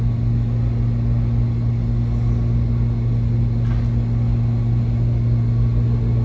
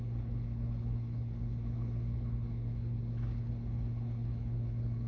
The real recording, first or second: first